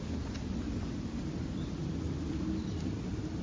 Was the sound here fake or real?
real